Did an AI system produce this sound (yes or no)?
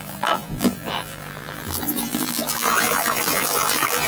yes